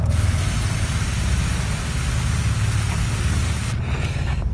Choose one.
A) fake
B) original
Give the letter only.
B